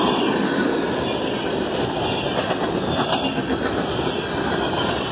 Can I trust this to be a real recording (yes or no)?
yes